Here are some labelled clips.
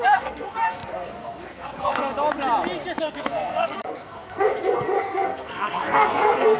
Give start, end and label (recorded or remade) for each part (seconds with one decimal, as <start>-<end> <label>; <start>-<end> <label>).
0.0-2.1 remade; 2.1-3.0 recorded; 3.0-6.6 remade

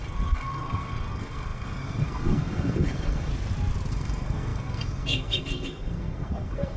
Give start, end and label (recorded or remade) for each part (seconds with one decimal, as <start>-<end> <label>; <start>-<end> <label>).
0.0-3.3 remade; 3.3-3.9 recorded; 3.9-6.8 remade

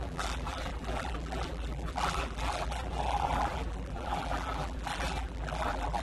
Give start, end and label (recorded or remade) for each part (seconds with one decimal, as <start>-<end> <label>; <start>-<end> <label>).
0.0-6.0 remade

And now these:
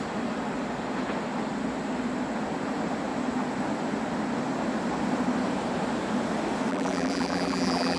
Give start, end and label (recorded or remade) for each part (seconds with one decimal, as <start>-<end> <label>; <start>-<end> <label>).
0.0-6.7 recorded; 6.7-8.0 remade